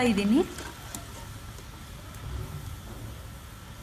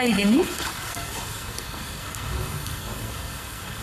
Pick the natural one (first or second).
first